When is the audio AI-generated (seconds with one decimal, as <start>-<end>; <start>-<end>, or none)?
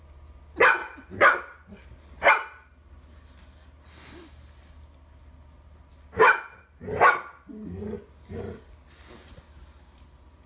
none